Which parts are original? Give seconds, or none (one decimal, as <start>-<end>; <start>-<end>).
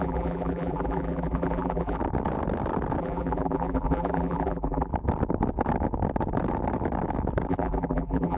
2.0-3.0; 4.9-7.5